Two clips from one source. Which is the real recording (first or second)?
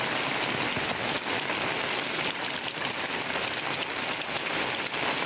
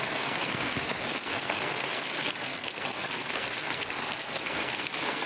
first